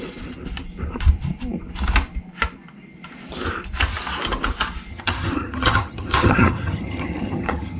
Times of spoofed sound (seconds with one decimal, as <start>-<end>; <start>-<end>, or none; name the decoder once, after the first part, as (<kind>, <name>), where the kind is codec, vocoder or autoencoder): 4.9-7.8 (vocoder, HiFi-GAN)